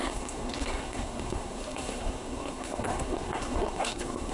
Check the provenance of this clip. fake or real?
fake